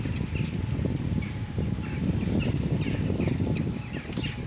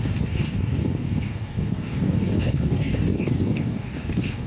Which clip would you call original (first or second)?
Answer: first